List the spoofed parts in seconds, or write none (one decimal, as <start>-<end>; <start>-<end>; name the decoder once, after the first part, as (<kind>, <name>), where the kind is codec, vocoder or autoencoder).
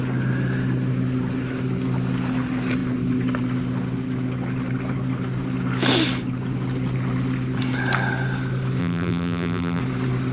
8.8-9.8 (vocoder, BigVGAN v2)